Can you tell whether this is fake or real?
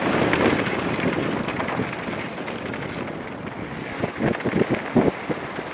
real